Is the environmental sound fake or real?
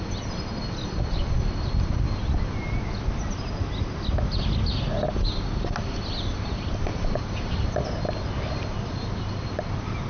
real